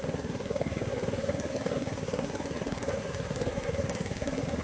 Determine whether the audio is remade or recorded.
remade